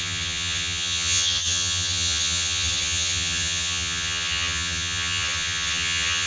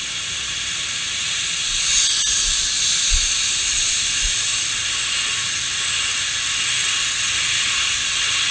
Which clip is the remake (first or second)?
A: first